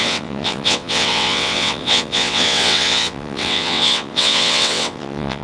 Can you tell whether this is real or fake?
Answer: fake